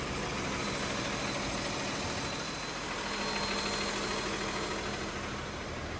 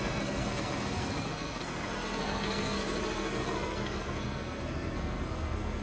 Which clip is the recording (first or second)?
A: first